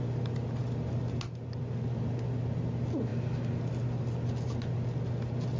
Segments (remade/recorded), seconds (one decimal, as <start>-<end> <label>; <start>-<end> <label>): 0.0-5.6 recorded